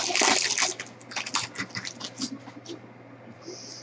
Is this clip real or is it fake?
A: real